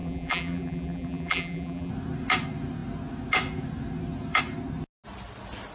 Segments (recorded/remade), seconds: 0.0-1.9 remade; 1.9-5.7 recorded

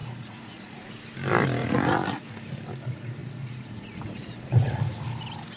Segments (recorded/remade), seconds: 0.0-0.9 remade; 0.9-1.6 recorded; 1.6-2.3 remade; 2.3-3.2 recorded; 3.2-4.8 remade; 4.8-5.6 recorded

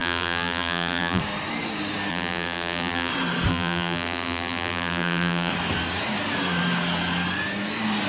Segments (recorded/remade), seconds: 0.0-1.2 remade; 1.2-2.1 recorded; 2.1-3.1 remade; 3.1-3.5 recorded; 3.5-5.5 remade; 5.5-8.1 recorded

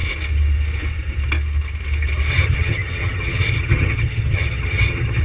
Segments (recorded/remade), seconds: 0.0-2.3 recorded; 2.3-5.2 remade

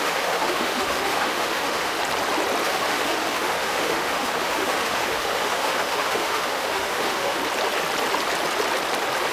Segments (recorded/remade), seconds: 0.0-2.0 remade; 2.0-2.6 recorded; 2.6-7.4 remade; 7.4-9.3 recorded

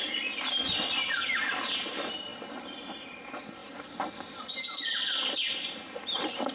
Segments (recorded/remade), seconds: 0.0-6.5 recorded